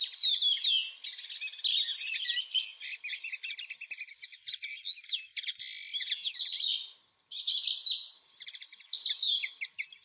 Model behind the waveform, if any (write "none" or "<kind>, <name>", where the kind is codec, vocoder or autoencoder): none